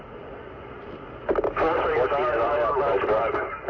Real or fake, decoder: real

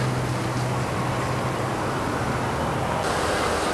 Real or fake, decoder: real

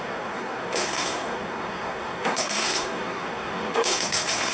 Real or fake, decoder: fake, codec, SNAC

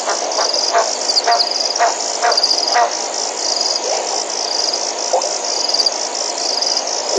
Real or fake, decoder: real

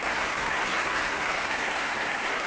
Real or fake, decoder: fake, codec, SNAC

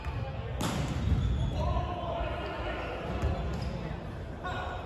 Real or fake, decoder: real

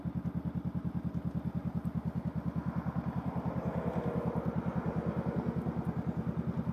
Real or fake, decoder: real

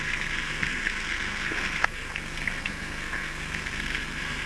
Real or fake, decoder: fake, codec, SNAC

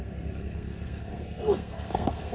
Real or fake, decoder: fake, codec, SNAC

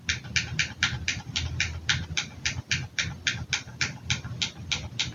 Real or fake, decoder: real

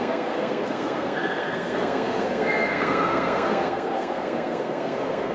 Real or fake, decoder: fake, codec, SNAC